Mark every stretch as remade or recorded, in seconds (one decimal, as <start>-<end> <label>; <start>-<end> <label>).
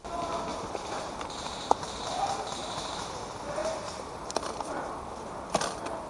0.0-0.5 recorded; 0.5-3.0 remade; 3.0-3.6 recorded; 3.6-4.5 remade; 4.5-6.1 recorded